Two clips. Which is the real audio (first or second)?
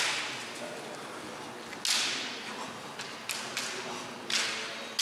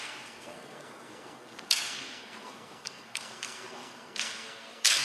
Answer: first